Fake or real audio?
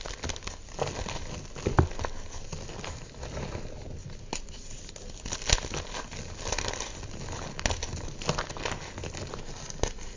real